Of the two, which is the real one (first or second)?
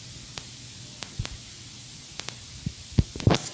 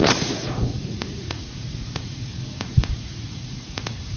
first